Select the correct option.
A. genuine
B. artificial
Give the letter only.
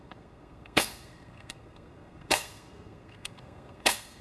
B